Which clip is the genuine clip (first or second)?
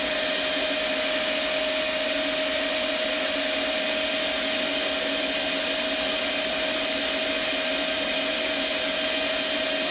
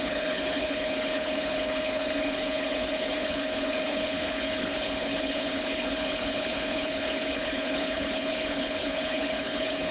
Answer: first